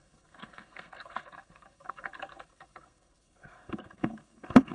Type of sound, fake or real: fake